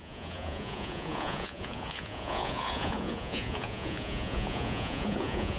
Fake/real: fake